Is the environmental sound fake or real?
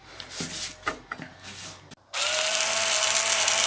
real